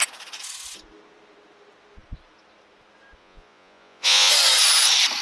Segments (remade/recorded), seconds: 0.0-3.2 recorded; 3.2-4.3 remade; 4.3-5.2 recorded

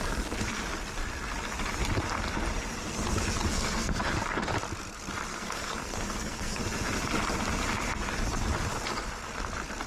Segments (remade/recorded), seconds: 0.0-3.5 recorded; 3.5-4.0 remade; 4.0-5.3 recorded; 5.3-6.6 remade; 6.6-9.9 recorded

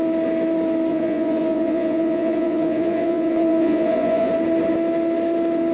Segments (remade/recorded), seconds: 0.0-0.9 recorded; 0.9-4.3 remade; 4.3-5.7 recorded

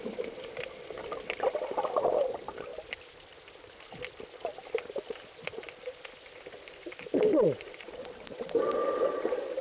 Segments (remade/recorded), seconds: 0.0-9.6 recorded

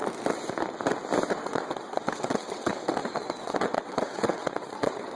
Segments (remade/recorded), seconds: 0.0-1.3 recorded; 1.3-5.2 remade